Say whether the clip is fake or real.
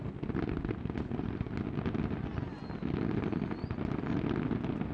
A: real